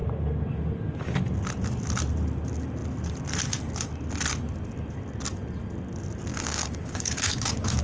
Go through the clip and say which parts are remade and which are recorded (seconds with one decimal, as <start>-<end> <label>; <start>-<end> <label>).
0.0-6.3 recorded; 6.3-7.8 remade